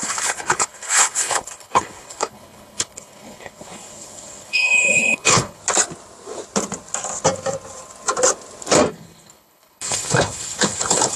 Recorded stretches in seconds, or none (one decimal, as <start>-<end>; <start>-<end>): 5.6-8.9